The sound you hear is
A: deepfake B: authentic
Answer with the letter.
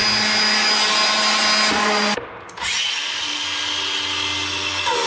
B